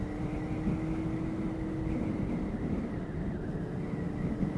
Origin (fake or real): real